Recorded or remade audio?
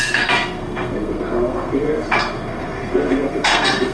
remade